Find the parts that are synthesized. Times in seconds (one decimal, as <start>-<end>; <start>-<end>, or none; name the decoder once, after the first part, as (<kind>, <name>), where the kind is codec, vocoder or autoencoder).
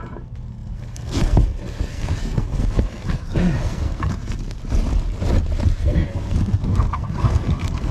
0.0-4.6 (codec, SNAC); 5.8-7.9